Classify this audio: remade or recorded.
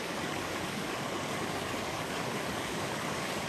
remade